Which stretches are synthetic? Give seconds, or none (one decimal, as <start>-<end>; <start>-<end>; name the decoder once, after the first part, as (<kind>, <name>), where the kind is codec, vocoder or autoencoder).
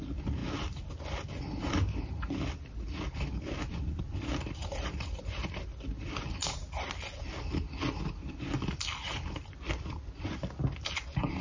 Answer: 4.6-5.2 (vocoder, BigVGAN v2)